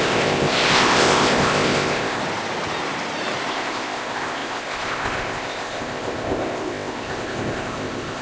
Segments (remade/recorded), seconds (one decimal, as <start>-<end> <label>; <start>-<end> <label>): 0.0-2.2 remade; 2.2-3.5 recorded; 3.5-8.2 remade